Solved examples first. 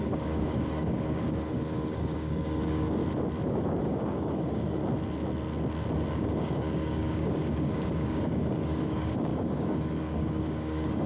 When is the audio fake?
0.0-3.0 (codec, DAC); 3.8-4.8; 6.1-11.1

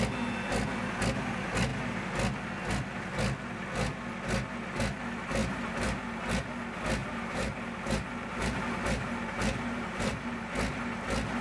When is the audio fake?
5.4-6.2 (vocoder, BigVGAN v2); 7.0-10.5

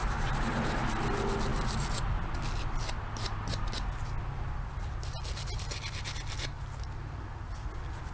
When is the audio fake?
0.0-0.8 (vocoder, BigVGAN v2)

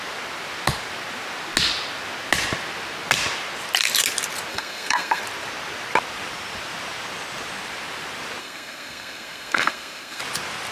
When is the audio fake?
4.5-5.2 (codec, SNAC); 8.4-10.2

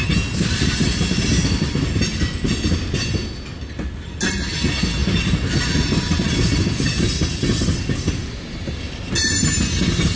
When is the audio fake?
none

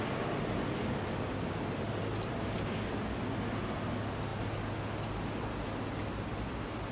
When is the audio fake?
none

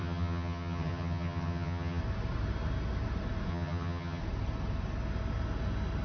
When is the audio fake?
0.0-2.0 (vocoder, HiFi-GAN); 3.5-4.2